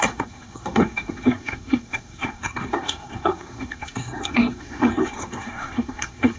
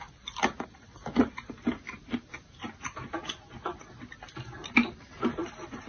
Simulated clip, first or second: first